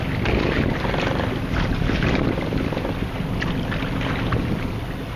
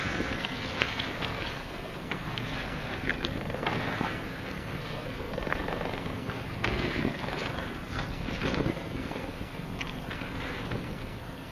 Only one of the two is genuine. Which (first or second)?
first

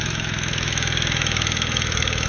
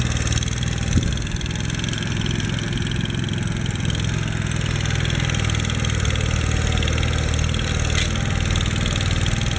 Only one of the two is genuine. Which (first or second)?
second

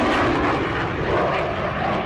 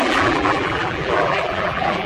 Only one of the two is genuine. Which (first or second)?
first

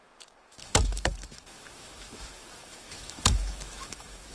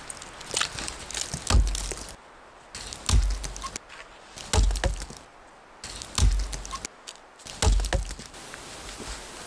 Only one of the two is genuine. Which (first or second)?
second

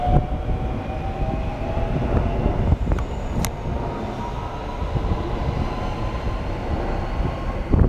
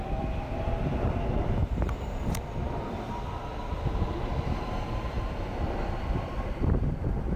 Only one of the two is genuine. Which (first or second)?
first